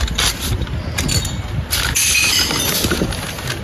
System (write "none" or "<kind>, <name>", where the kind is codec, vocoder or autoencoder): none